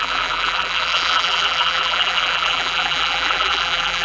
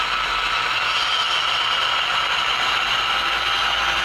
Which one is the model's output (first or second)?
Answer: first